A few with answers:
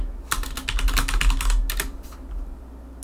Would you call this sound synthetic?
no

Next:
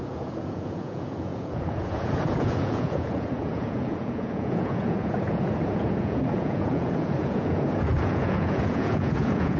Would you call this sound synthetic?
yes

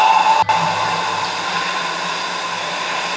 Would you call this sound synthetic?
no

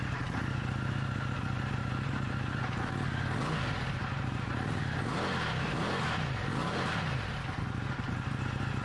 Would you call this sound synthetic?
no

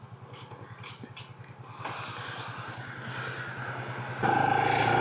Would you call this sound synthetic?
no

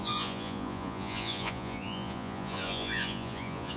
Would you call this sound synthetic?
yes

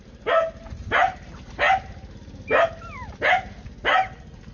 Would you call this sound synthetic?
no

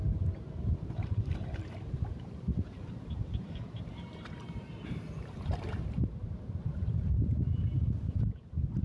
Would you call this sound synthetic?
yes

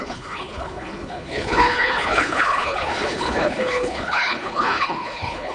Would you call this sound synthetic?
yes